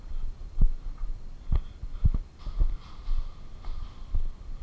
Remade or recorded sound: recorded